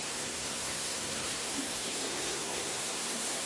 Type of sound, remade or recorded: remade